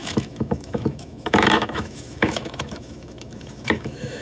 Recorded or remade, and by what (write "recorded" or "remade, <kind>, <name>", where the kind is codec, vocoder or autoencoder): remade, autoencoder, DAC-VAE